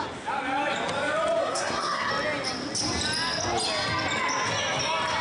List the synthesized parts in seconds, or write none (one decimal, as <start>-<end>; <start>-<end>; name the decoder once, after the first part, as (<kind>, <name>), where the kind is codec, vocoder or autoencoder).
1.4-2.1 (codec, SNAC)